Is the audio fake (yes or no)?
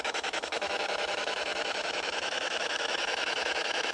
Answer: yes